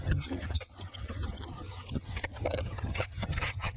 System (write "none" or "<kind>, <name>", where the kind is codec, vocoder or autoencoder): vocoder, HiFi-GAN